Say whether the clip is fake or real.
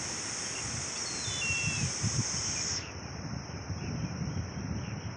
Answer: real